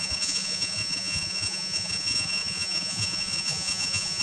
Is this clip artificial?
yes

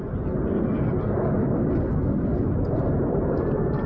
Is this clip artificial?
no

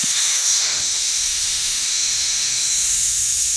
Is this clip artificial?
yes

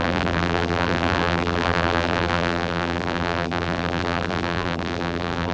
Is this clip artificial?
yes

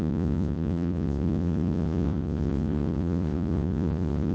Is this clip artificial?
yes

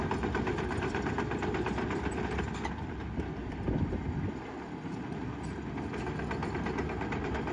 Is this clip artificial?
no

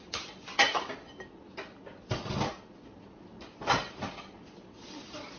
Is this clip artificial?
no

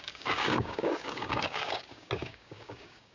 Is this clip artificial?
yes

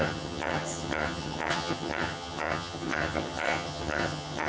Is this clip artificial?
yes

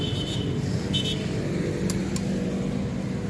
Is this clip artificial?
no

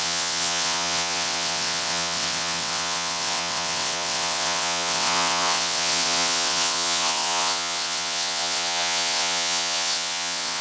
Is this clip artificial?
yes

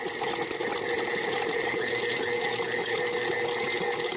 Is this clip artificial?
no